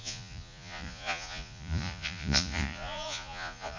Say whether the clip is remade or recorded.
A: remade